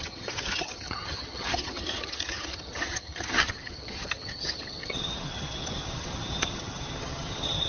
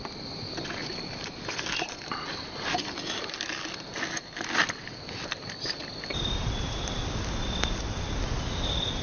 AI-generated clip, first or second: first